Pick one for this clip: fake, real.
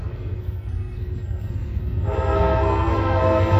fake